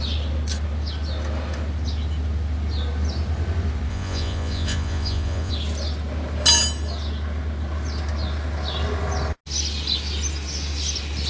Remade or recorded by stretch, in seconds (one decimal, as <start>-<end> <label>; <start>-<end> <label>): 0.0-3.9 recorded; 3.9-5.5 remade; 5.5-11.3 recorded

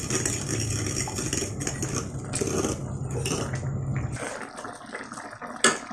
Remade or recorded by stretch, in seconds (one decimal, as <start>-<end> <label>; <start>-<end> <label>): 0.0-5.9 recorded

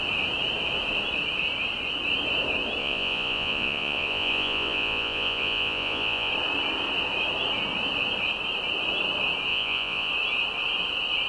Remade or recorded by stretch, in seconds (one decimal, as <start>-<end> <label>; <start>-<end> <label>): 0.0-2.8 recorded; 2.8-6.3 remade; 6.3-9.5 recorded; 9.5-10.1 remade; 10.1-11.3 recorded